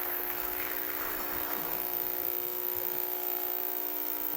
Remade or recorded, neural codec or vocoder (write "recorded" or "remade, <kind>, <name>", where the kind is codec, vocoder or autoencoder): remade, autoencoder, DAC-VAE